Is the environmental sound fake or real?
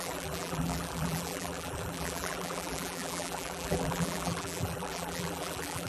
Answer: fake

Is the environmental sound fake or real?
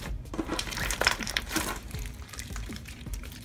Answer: fake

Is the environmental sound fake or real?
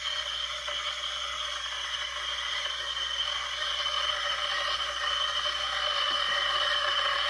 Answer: real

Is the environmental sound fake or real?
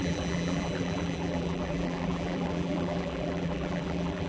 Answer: fake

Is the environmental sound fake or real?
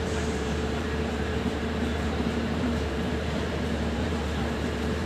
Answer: fake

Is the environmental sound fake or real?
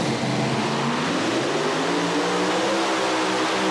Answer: real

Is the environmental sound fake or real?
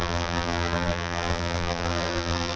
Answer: fake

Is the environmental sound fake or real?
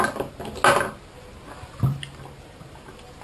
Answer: real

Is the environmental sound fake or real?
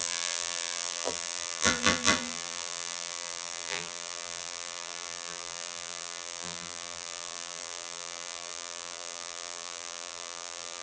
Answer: fake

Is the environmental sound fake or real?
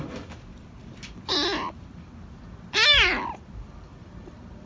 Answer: fake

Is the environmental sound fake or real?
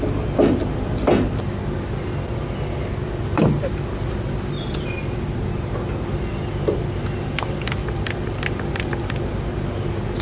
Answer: real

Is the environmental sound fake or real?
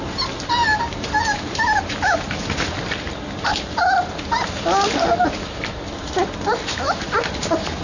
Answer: real